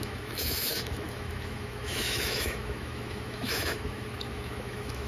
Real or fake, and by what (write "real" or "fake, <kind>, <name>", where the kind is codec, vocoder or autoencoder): fake, autoencoder, DAC-VAE